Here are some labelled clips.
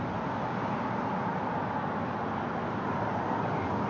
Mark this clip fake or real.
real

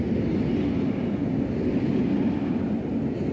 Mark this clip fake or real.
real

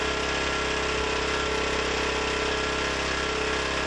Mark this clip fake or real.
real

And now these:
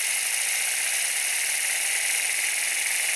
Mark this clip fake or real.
real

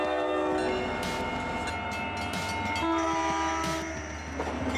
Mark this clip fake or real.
real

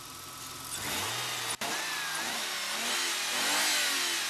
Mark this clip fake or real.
real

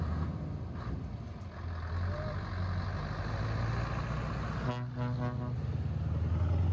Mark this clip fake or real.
real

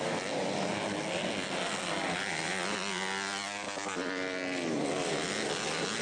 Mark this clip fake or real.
real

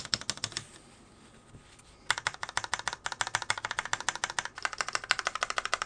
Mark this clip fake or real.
real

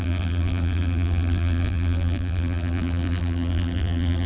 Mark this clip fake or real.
fake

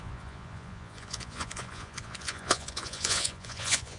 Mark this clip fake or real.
fake